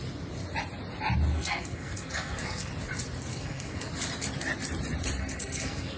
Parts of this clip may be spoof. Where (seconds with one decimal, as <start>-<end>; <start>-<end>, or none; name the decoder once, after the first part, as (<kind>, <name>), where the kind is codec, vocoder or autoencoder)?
1.3-2.7 (codec, SNAC); 3.3-3.9; 5.2-6.0